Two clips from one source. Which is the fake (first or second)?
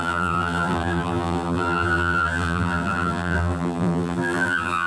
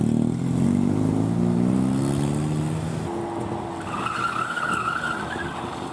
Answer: first